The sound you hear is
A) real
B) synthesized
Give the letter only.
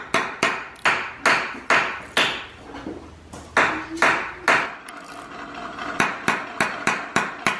A